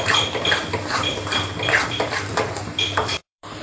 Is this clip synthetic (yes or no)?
yes